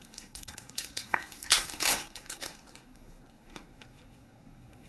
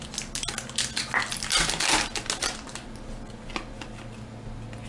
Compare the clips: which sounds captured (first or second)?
second